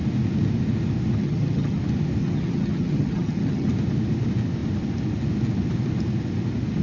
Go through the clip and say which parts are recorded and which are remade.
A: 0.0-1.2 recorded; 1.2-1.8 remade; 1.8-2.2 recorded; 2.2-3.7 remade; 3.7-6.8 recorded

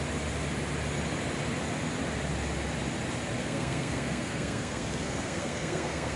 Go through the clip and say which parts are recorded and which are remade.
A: 0.0-3.4 recorded; 3.4-6.2 remade